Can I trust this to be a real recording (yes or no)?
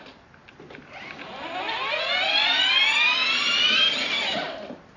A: yes